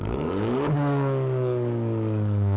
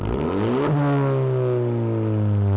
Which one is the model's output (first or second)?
first